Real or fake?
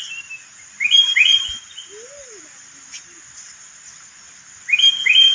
real